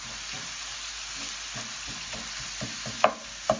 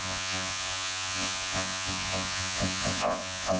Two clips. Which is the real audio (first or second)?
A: first